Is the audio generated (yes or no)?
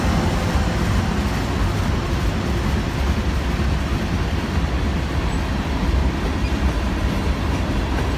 no